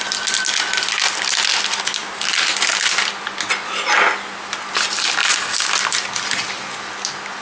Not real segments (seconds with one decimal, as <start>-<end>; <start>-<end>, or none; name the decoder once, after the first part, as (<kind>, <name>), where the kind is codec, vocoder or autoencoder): none